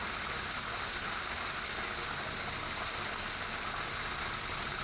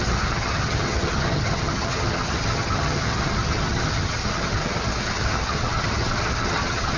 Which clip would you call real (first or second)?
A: first